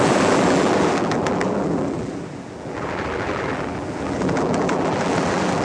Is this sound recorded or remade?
remade